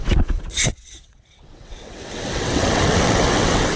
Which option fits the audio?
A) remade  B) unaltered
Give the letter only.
A